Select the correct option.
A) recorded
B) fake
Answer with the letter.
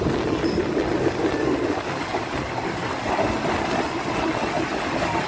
A